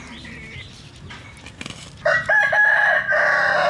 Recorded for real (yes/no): yes